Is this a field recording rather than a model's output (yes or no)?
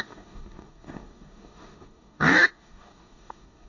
no